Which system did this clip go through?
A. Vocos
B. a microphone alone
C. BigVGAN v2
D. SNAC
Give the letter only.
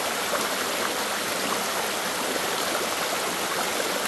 B